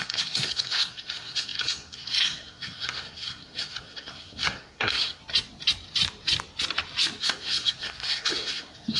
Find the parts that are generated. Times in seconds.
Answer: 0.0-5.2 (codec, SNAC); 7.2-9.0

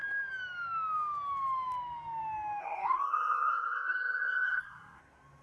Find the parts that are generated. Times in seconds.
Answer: 2.6-5.0 (codec, SNAC)

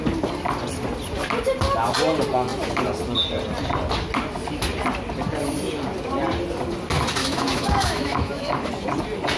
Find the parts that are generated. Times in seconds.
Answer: 7.2-8.7 (autoencoder, DAC-VAE)

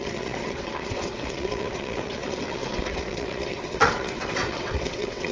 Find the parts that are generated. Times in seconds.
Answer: 0.0-5.3 (vocoder, WaveNeXt)

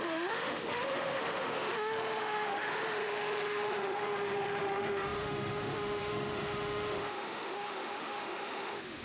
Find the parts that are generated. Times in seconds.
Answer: 0.0-9.0 (autoencoder, DAC-VAE)

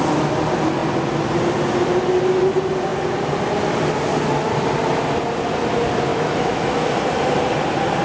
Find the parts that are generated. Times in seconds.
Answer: 6.1-6.8 (autoencoder, DAC-VAE)

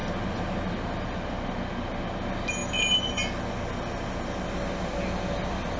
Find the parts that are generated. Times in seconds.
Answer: none